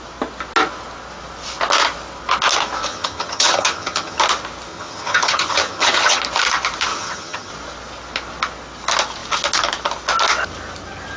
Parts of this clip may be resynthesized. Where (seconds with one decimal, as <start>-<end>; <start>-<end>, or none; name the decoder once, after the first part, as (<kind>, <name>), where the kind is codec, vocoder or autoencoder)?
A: 2.9-4.2 (vocoder, HiFi-GAN); 4.7-6.2; 6.9-7.5